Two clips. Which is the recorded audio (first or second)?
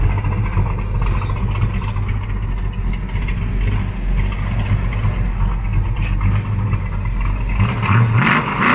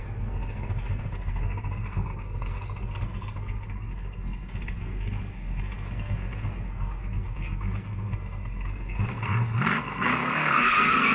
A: first